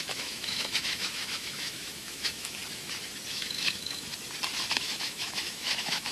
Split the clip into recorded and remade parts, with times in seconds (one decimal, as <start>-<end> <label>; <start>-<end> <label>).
0.0-2.6 remade; 2.6-3.3 recorded; 3.3-4.1 remade; 4.1-4.7 recorded; 4.7-6.1 remade